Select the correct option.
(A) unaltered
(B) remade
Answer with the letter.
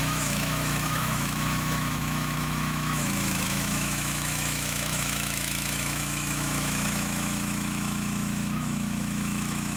B